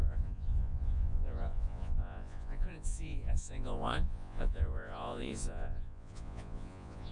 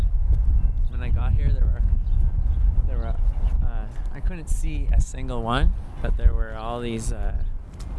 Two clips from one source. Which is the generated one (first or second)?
first